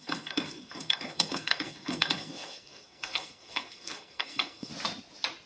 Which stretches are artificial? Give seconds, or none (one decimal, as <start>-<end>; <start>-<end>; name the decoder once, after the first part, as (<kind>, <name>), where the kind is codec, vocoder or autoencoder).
0.0-4.7 (codec, SNAC)